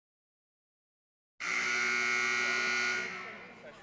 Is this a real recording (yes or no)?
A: yes